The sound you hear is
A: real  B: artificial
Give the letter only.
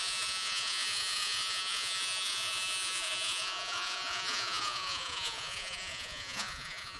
B